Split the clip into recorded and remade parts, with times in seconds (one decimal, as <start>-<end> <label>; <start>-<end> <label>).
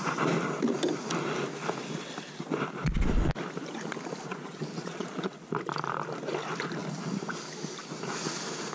0.0-4.3 recorded; 4.3-5.3 remade; 5.3-8.7 recorded